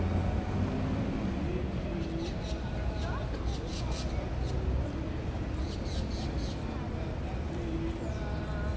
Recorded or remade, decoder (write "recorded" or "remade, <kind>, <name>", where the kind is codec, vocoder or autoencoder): recorded